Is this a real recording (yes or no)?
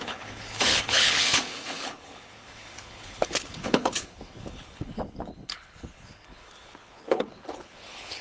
no